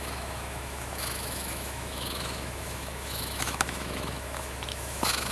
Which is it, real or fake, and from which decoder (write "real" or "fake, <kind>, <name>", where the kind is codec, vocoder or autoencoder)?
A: fake, autoencoder, DAC-VAE